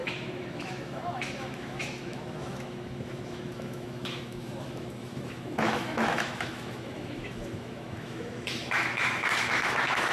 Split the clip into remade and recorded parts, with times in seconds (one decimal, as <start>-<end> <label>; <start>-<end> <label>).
0.0-10.1 remade